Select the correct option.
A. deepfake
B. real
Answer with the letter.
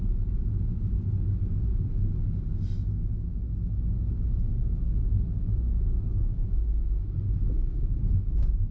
B